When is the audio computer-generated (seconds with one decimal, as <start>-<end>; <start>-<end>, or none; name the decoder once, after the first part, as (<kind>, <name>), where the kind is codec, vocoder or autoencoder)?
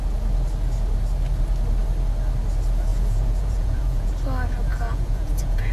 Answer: 2.9-4.1 (vocoder, Vocos); 4.7-5.7